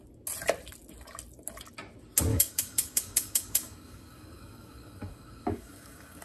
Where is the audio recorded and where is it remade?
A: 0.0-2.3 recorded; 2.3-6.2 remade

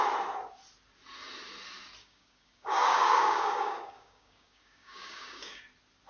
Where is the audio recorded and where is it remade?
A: 0.0-2.0 recorded; 2.0-5.6 remade; 5.6-6.1 recorded

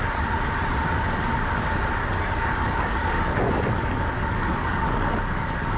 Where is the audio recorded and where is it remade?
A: 0.0-2.0 recorded; 2.0-5.8 remade

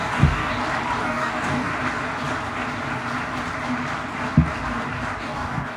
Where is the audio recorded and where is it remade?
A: 0.0-0.5 remade; 0.5-1.0 recorded; 1.0-1.7 remade; 1.7-5.2 recorded; 5.2-5.8 remade

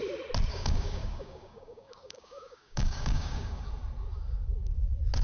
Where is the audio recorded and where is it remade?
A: 0.0-0.5 recorded; 0.5-3.6 remade; 3.6-5.2 recorded

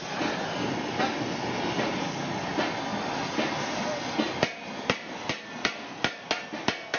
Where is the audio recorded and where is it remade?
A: 0.0-7.0 recorded

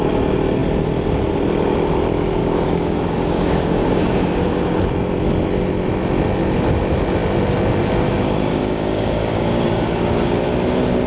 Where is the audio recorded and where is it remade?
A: 0.0-2.4 recorded; 2.4-4.8 remade; 4.8-8.6 recorded; 8.6-10.4 remade; 10.4-11.1 recorded